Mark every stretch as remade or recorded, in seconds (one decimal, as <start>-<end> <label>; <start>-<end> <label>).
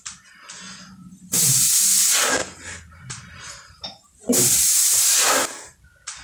0.0-2.4 recorded; 2.4-5.0 remade; 5.0-6.2 recorded